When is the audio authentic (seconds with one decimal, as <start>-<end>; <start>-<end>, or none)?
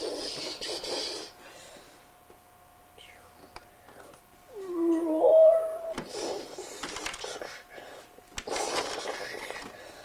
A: 0.0-10.0